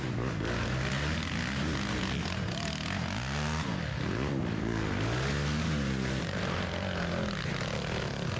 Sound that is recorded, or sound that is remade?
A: recorded